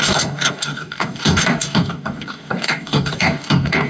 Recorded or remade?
remade